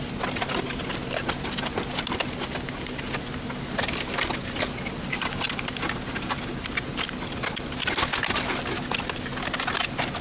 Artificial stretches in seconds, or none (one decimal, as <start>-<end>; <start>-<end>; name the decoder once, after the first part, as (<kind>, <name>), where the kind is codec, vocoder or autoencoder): none